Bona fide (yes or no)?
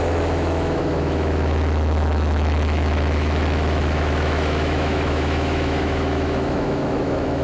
no